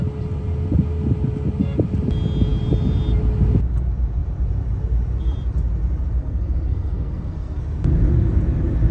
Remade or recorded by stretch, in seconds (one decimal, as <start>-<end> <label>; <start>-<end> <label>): 0.0-6.2 recorded; 6.2-7.6 remade; 7.6-8.9 recorded